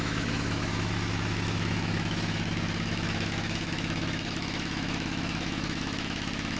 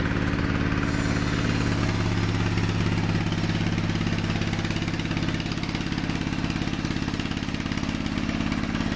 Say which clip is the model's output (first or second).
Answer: first